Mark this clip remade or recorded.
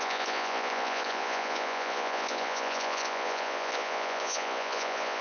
remade